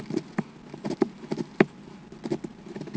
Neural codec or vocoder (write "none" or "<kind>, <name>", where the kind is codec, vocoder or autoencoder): none